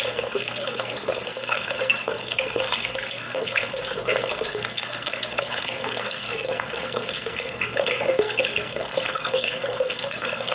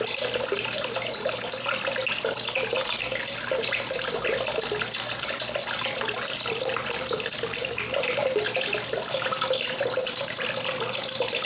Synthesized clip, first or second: first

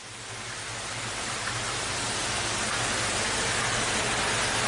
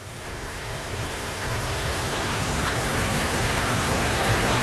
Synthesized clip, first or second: second